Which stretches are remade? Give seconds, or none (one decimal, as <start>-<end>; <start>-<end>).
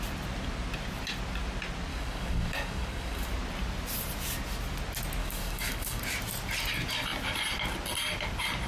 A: 1.9-3.3; 5.2-6.0